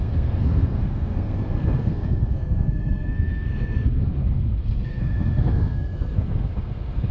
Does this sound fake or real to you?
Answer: fake